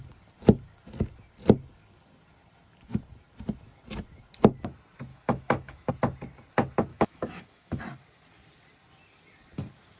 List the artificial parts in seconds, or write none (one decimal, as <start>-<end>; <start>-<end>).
5.1-5.9; 6.9-7.8